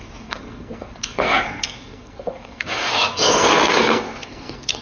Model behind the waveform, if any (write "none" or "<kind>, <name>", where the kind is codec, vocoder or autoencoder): codec, SNAC